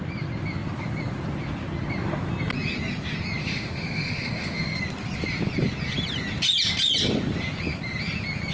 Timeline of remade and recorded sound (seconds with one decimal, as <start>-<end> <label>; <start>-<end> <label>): 0.0-3.4 recorded; 3.4-4.8 remade; 4.8-8.5 recorded